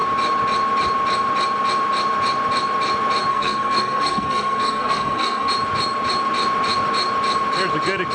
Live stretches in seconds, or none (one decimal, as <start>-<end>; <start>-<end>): 0.0-3.3; 5.5-8.1